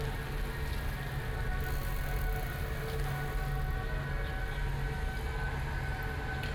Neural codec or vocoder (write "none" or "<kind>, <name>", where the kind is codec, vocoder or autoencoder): none